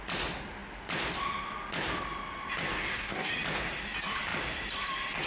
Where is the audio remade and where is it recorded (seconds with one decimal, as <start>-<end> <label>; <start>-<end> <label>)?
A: 0.0-2.7 recorded; 2.7-3.3 remade; 3.3-5.3 recorded